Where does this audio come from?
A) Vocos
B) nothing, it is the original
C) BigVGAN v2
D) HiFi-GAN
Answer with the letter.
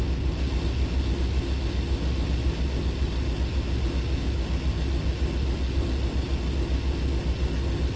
B